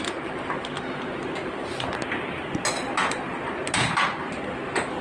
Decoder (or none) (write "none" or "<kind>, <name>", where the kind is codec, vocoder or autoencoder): none